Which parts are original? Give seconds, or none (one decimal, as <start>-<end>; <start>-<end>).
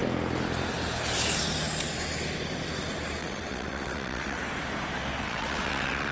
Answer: 0.0-3.2; 4.4-5.2